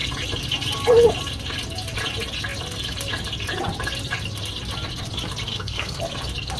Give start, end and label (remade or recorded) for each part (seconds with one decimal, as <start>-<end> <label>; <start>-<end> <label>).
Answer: 0.0-5.5 recorded; 5.5-6.0 remade; 6.0-6.6 recorded